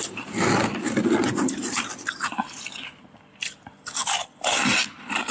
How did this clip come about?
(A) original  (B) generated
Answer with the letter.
B